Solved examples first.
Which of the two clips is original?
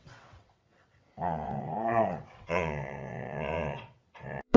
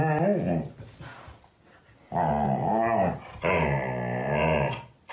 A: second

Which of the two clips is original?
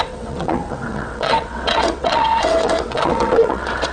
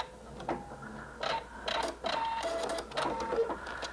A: second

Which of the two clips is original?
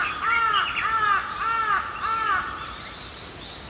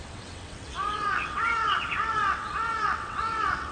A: first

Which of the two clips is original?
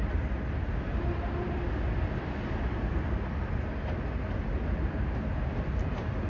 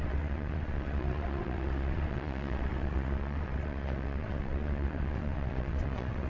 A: first